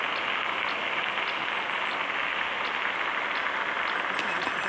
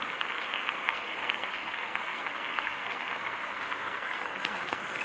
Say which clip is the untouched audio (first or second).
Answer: first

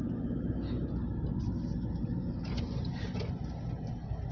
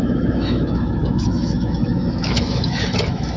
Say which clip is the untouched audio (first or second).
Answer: first